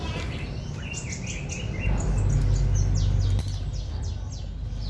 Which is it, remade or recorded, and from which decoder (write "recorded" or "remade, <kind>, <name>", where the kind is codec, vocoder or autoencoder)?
recorded